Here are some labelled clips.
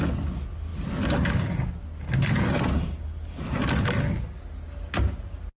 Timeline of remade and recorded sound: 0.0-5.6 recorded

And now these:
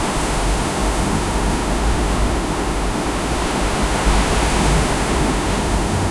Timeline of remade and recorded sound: 0.0-6.1 remade

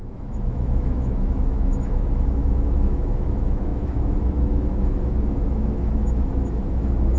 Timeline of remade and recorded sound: 0.0-7.2 remade